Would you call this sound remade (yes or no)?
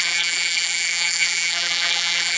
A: yes